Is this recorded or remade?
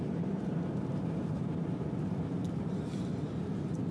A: remade